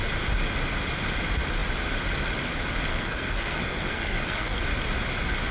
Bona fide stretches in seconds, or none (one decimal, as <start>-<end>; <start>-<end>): 0.0-2.9; 4.6-5.5